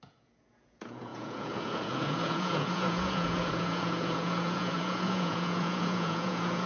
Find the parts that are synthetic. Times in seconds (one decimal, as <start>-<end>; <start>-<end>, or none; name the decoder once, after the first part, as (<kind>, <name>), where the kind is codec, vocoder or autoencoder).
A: 0.0-6.7 (vocoder, Vocos)